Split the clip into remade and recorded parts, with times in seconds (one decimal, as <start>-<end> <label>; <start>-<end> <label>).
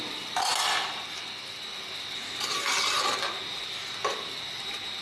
0.0-5.0 recorded